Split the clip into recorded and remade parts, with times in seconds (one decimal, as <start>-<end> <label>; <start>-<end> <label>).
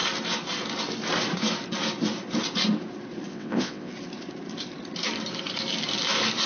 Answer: 0.0-3.3 recorded; 3.3-3.9 remade; 3.9-6.5 recorded